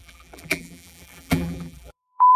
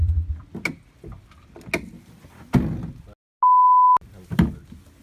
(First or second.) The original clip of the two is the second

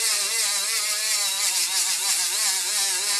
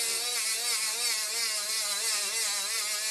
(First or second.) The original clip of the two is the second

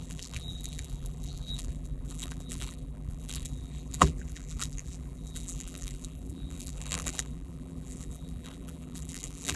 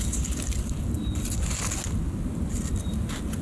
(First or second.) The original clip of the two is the second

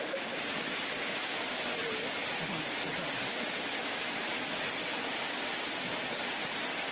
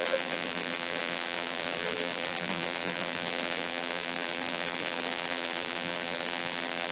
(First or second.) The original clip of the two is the first